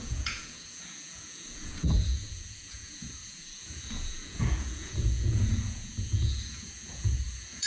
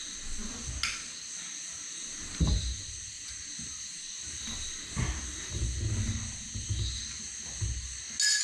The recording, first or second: second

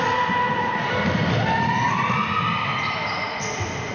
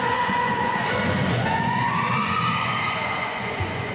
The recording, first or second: first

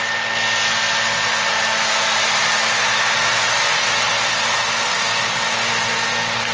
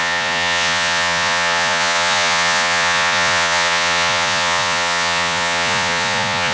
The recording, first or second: first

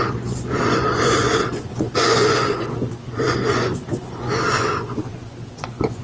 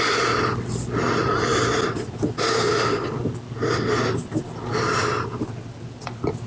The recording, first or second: second